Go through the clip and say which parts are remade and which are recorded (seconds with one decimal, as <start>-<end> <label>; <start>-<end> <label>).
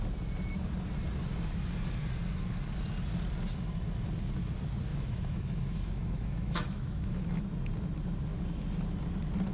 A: 0.0-4.9 recorded; 4.9-7.4 remade; 7.4-9.5 recorded